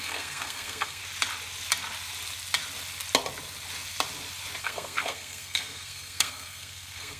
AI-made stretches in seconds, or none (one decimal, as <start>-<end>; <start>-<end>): 0.0-1.0; 4.6-7.2